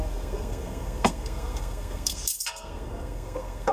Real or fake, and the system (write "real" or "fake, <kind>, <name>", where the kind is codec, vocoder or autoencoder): fake, codec, SNAC